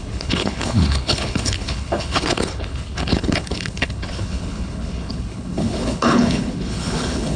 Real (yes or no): no